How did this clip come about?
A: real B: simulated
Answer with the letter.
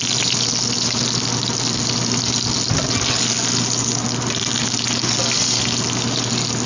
A